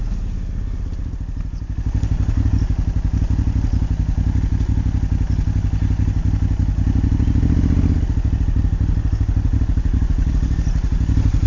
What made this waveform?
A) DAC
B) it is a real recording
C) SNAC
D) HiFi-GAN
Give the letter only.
B